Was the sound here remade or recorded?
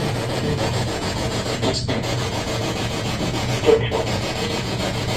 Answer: remade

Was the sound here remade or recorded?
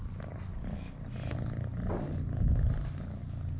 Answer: recorded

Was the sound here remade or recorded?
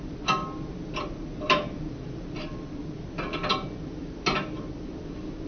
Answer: recorded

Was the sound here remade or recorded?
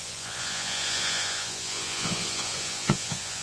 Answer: remade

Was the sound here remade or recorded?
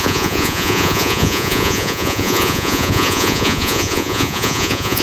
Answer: remade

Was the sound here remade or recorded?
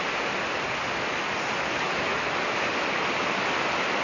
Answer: recorded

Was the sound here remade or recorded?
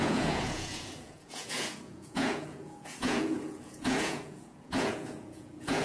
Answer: remade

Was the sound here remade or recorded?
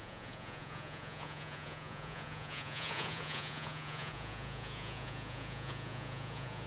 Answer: remade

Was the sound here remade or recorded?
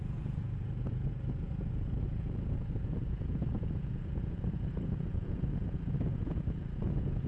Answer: remade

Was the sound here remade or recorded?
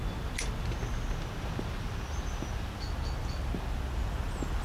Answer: recorded